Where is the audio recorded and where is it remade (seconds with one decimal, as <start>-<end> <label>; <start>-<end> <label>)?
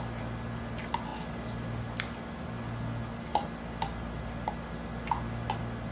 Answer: 0.0-5.9 recorded